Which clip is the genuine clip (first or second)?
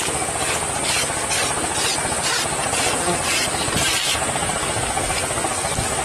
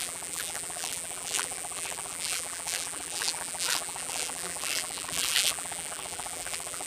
first